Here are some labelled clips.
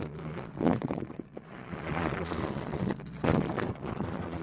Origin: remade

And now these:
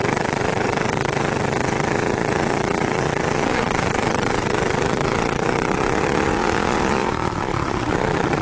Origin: remade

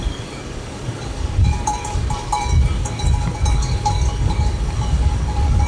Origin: remade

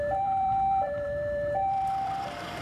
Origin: remade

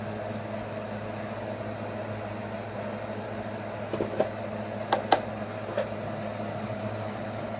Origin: remade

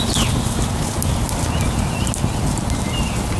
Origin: recorded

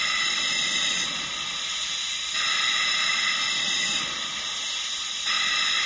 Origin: recorded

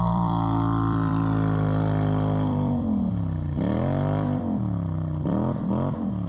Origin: remade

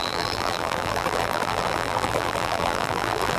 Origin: remade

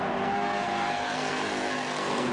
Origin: remade